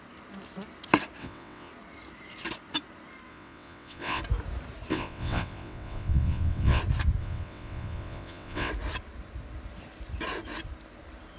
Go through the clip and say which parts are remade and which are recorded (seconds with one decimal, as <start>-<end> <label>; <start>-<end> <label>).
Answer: 0.0-1.2 recorded; 1.2-1.7 remade; 1.7-3.3 recorded; 3.3-4.2 remade; 4.2-4.9 recorded; 4.9-6.8 remade; 6.8-7.2 recorded; 7.2-8.7 remade; 8.7-11.4 recorded